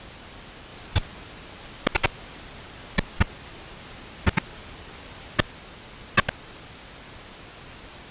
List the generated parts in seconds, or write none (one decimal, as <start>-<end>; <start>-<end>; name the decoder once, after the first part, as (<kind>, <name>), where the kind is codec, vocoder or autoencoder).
none